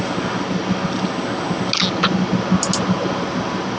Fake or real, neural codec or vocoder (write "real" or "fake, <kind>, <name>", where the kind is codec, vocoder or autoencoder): real